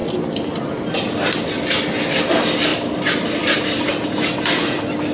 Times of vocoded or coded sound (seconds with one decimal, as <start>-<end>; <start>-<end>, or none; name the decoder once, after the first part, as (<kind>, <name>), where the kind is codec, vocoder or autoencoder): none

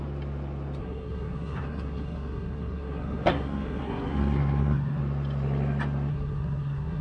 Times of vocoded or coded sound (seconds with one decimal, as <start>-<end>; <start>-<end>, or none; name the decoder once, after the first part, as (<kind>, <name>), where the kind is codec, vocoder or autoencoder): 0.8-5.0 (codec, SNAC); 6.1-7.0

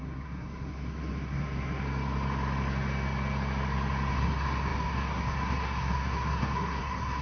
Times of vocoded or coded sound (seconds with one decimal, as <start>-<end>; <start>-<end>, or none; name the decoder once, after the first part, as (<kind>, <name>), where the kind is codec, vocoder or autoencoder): 0.0-1.8 (codec, SNAC); 4.1-7.2

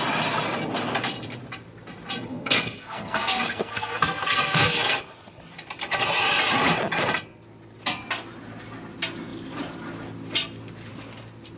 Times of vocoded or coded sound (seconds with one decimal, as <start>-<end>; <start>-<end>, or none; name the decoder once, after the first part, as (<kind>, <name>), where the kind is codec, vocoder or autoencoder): 2.3-5.0 (codec, SNAC)

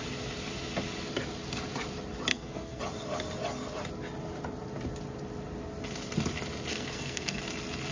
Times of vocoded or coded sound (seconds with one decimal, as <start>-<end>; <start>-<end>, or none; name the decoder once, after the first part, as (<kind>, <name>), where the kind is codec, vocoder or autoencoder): 2.3-2.8 (codec, SNAC); 6.7-7.4